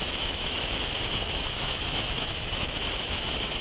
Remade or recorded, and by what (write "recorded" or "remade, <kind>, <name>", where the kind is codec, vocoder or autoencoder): remade, autoencoder, DAC-VAE